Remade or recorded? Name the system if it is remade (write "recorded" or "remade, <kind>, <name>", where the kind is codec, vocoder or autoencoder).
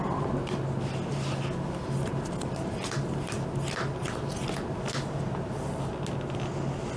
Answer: recorded